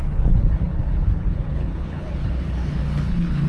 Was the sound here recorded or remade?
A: remade